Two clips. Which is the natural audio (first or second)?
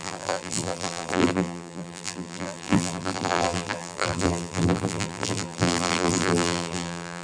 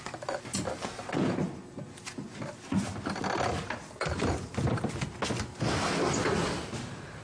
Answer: second